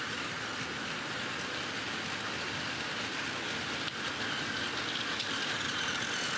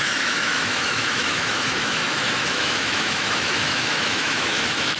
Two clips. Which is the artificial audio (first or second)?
second